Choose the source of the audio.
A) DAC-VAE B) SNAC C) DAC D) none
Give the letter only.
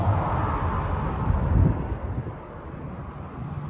D